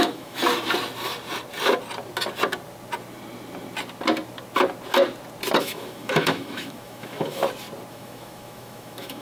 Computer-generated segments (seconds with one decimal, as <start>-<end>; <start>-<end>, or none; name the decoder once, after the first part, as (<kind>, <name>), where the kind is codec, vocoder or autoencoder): 0.0-0.4 (autoencoder, DAC-VAE); 5.6-7.4; 7.9-9.2